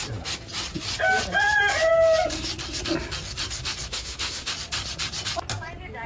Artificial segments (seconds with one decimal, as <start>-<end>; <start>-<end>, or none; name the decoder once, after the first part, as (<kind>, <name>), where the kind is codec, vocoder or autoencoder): 3.9-4.5 (autoencoder, DAC-VAE)